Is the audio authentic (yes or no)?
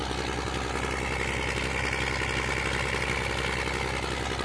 yes